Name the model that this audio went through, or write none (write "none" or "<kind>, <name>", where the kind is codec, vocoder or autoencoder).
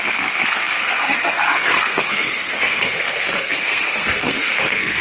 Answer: codec, SNAC